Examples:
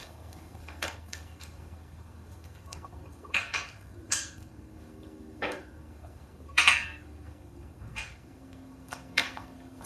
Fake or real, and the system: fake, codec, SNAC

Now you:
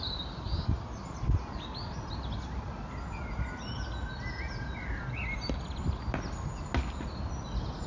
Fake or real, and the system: real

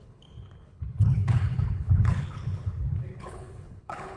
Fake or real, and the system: fake, codec, HILCodec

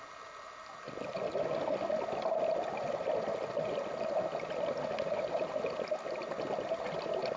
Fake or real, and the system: real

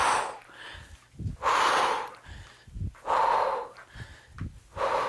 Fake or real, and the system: real